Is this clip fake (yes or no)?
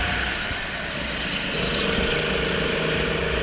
no